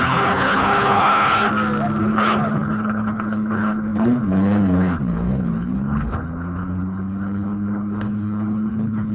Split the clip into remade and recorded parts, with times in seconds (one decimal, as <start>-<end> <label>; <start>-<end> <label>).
0.0-1.5 remade; 1.5-2.0 recorded; 2.0-9.1 remade